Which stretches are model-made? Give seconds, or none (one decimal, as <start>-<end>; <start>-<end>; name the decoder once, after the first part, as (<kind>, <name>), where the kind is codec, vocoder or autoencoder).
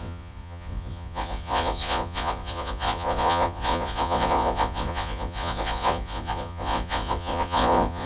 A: 0.0-8.1 (vocoder, Vocos)